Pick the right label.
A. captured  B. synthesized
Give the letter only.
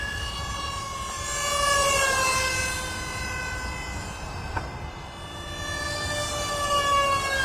A